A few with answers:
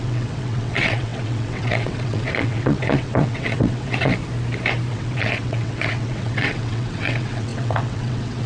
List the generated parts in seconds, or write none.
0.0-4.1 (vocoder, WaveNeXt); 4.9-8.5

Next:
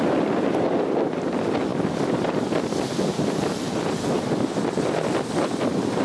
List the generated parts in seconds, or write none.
none

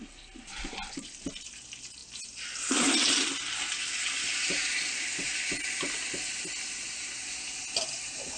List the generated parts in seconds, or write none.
none

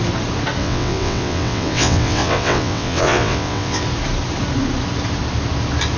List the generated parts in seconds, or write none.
0.6-3.8 (vocoder, WaveNeXt)

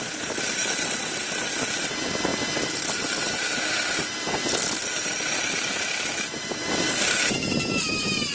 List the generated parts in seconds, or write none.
none

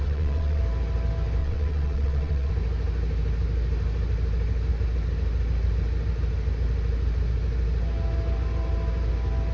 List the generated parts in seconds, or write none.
0.0-0.6 (vocoder, WaveNeXt); 1.4-2.5

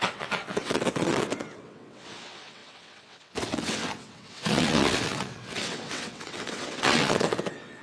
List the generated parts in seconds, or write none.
0.0-7.8 (vocoder, WaveNeXt)

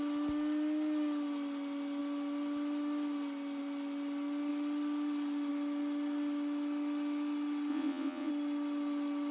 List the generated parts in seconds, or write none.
7.7-8.3 (vocoder, WaveNeXt)